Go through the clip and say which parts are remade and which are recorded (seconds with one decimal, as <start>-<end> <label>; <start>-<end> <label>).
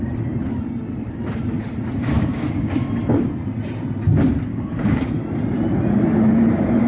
0.0-2.0 recorded; 2.0-2.7 remade; 2.7-4.5 recorded; 4.5-5.1 remade; 5.1-6.9 recorded